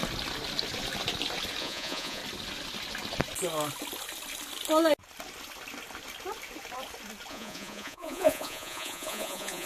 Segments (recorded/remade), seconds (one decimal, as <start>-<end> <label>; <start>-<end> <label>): 0.0-1.6 recorded; 1.6-2.2 remade; 2.2-7.3 recorded; 7.3-9.7 remade